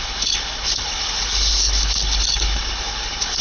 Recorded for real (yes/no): no